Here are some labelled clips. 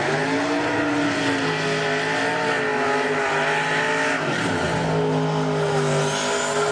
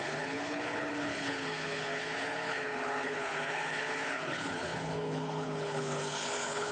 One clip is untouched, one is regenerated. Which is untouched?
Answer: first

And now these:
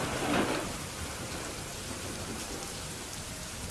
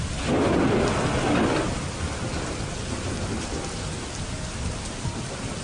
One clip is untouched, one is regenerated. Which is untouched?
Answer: second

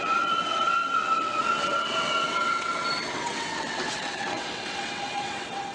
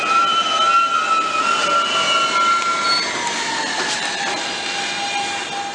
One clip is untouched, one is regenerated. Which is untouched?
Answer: second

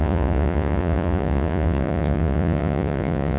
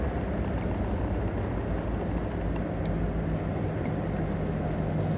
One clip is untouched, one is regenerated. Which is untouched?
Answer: second